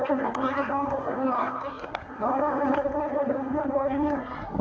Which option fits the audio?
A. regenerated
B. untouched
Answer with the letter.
A